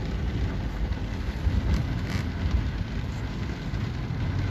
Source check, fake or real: real